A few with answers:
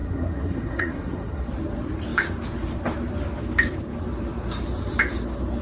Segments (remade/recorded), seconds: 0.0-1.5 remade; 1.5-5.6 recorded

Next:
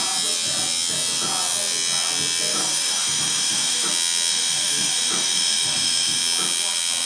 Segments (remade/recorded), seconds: 0.0-2.5 recorded; 2.5-3.9 remade; 3.9-4.3 recorded; 4.3-6.2 remade; 6.2-7.1 recorded